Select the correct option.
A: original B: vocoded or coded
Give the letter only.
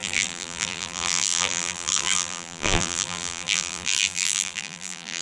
B